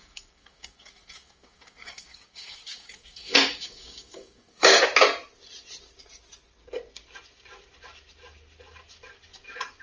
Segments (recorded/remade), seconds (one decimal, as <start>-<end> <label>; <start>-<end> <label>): 0.0-4.8 remade; 4.8-9.8 recorded